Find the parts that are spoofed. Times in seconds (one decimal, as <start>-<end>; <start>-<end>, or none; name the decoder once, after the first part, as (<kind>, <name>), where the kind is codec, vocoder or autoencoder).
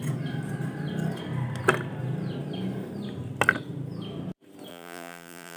4.7-5.6 (vocoder, BigVGAN v2)